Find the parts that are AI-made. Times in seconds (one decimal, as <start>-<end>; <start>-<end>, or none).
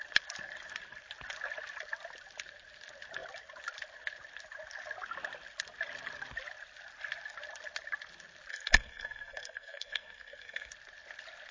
8.5-10.7